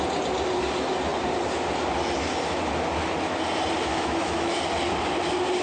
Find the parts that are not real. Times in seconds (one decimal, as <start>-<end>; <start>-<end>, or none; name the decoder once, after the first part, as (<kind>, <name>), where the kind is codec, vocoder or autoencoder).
3.9-4.6 (autoencoder, DAC-VAE)